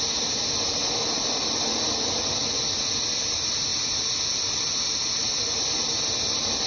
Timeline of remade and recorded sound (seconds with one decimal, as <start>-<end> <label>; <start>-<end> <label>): 0.0-6.7 recorded

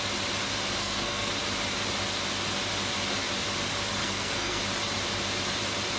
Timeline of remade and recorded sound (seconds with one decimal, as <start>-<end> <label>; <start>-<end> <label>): 0.0-0.8 recorded; 0.8-1.3 remade; 1.3-4.0 recorded; 4.0-4.6 remade; 4.6-6.0 recorded

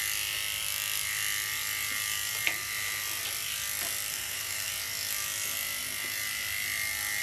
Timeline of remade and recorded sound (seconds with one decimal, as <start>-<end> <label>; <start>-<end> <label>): 0.0-4.1 recorded; 4.1-4.7 remade; 4.7-7.2 recorded

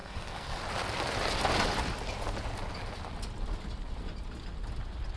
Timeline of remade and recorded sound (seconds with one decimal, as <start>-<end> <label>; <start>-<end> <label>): 0.0-0.6 remade; 0.6-5.2 recorded

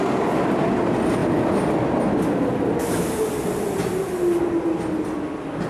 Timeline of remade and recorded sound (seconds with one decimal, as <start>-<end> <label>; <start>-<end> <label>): 0.0-5.7 recorded